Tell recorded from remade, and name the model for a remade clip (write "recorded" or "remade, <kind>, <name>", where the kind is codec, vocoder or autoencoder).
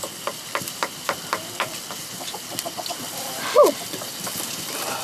remade, vocoder, BigVGAN v2